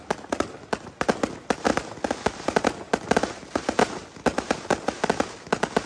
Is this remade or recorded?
recorded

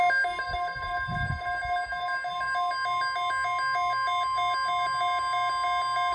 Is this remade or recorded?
recorded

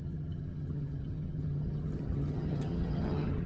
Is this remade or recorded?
remade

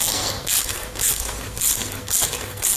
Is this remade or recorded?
remade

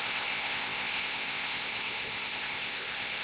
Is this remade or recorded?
remade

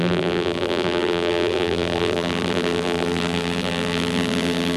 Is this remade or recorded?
remade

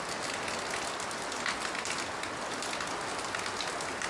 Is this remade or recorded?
recorded